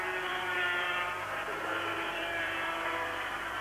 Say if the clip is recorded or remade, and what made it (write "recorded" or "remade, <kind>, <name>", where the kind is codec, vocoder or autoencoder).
remade, vocoder, BigVGAN v2